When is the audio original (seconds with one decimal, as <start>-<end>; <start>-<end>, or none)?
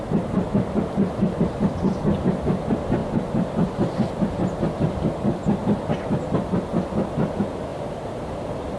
0.0-8.8